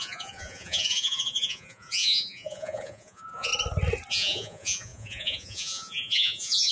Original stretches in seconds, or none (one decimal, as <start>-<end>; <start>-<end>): 3.5-4.1

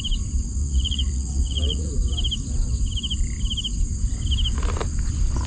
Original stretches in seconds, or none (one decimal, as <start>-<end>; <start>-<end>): 0.0-0.6; 1.9-5.5

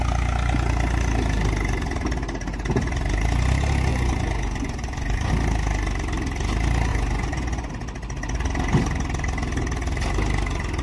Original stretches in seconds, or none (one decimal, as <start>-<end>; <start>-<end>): 0.0-3.9; 5.3-6.9; 7.7-10.8

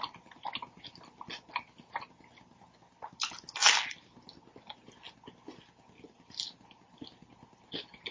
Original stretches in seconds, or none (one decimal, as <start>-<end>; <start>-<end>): 0.0-8.1

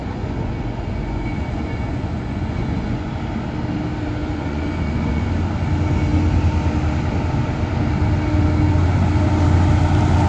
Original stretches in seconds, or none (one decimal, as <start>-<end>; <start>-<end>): 3.1-4.2; 5.3-10.3

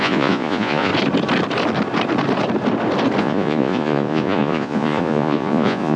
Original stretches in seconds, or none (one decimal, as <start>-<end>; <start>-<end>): 0.9-3.2